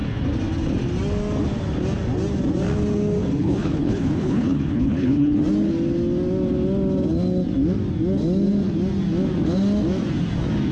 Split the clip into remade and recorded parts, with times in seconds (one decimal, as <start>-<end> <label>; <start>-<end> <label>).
0.0-3.4 recorded; 3.4-5.4 remade; 5.4-10.7 recorded